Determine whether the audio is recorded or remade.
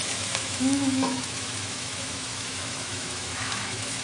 remade